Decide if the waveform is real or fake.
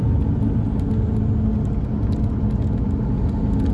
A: real